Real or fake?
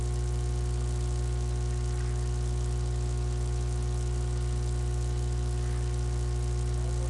real